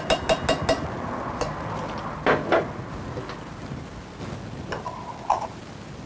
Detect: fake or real real